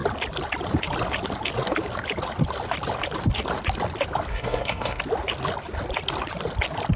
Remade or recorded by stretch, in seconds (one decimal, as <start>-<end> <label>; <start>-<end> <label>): 0.0-4.3 recorded; 4.3-5.0 remade; 5.0-7.0 recorded